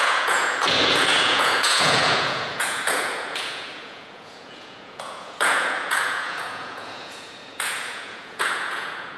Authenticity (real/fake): fake